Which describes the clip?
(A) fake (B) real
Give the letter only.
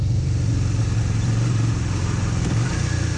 A